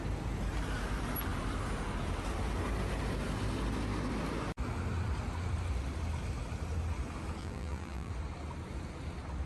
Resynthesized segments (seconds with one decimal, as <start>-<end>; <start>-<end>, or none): 7.4-8.1

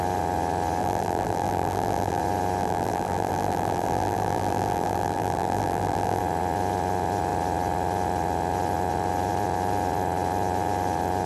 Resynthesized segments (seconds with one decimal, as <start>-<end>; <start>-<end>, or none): 0.8-2.2; 2.6-6.2

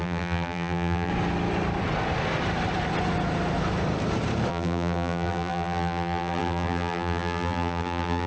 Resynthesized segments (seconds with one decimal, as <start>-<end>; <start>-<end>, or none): 0.0-1.1; 4.5-8.3

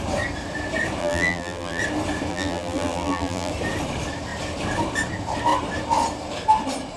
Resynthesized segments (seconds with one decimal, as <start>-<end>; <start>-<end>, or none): 1.0-1.8; 2.3-3.5